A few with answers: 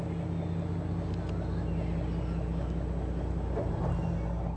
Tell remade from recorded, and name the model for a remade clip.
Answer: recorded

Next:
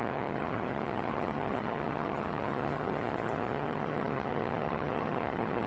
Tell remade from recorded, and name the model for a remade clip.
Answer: remade, vocoder, HiFi-GAN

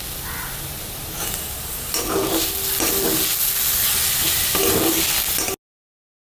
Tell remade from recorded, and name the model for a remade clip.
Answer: recorded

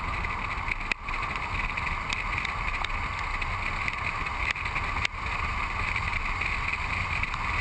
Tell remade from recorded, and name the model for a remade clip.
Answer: recorded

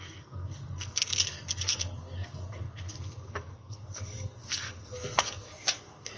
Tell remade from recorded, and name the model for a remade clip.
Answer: remade, codec, SNAC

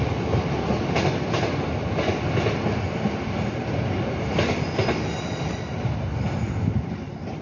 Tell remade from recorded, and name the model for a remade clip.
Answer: recorded